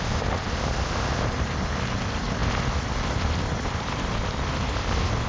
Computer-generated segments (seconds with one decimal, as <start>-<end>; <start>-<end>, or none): none

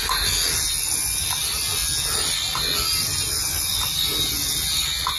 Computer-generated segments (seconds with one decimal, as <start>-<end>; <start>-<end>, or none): none

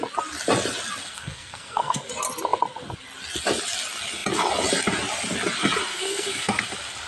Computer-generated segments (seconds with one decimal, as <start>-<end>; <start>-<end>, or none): 1.0-2.1; 5.9-6.6

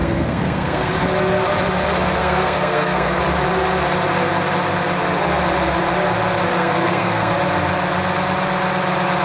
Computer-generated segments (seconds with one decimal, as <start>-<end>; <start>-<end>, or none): 0.0-0.9; 2.2-3.2; 6.6-7.3

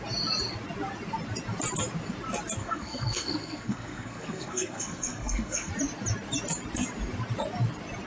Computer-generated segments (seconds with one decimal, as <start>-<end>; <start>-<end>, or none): 2.6-5.7

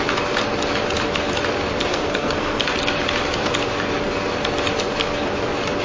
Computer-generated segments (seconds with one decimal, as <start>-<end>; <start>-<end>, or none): 1.9-2.6

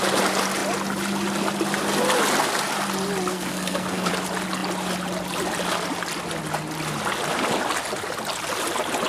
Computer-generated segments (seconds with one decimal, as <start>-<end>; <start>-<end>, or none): 3.3-4.1